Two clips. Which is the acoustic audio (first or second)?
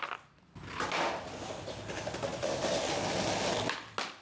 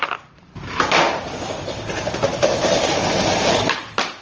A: first